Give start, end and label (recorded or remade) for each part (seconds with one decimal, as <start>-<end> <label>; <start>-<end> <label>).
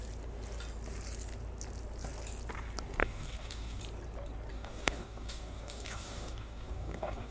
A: 0.0-3.0 recorded; 3.0-3.8 remade; 3.8-4.5 recorded; 4.5-7.3 remade